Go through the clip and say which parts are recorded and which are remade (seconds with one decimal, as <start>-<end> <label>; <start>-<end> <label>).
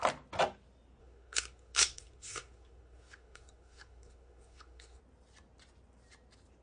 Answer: 0.0-1.0 recorded; 1.0-5.0 remade; 5.0-6.6 recorded